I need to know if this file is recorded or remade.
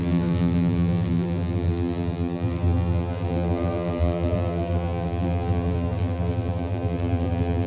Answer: remade